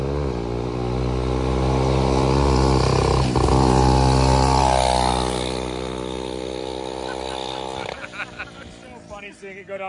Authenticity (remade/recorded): recorded